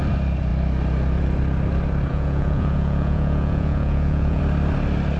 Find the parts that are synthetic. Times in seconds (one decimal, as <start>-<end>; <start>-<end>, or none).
2.1-4.4